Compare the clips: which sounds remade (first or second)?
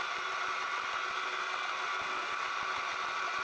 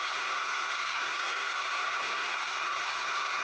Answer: second